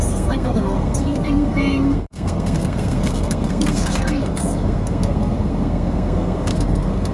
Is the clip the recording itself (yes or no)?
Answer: no